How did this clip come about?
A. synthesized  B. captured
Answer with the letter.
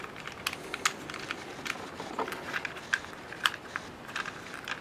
B